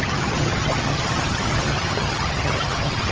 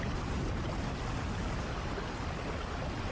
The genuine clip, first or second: second